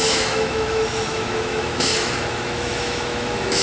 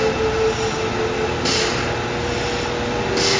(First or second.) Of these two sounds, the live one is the second